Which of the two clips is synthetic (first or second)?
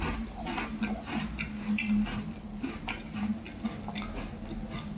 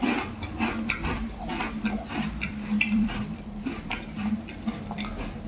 second